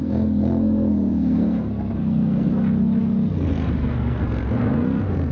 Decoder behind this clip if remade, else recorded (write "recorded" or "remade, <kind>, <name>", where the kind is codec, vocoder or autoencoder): remade, codec, SNAC